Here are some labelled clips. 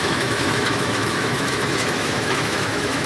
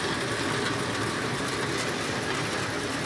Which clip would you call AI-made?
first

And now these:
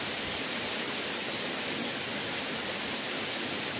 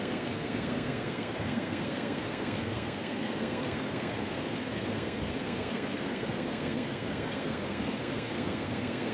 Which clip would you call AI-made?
second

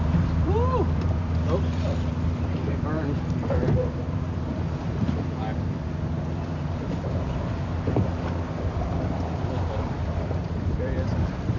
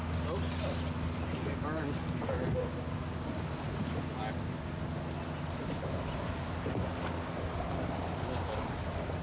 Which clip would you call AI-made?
first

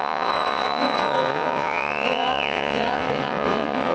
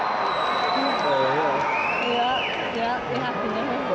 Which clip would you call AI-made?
first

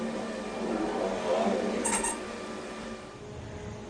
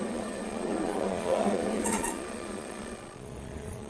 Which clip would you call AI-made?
second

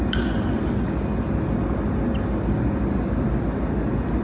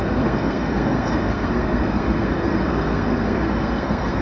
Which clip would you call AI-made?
second